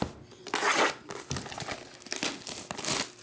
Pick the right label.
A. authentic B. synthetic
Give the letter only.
A